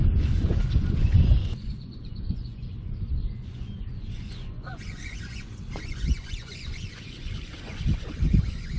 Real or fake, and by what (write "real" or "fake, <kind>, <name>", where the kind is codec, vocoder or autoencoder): fake, vocoder, Vocos